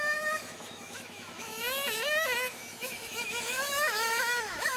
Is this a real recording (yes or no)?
no